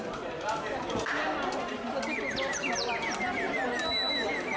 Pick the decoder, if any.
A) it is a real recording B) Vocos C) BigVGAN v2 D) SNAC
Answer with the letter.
A